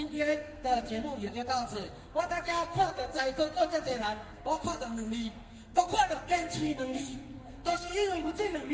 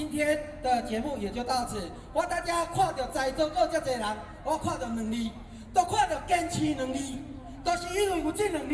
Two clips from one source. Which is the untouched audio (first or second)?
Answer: second